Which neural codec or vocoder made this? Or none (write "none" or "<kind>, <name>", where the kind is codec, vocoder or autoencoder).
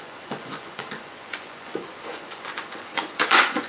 vocoder, Vocos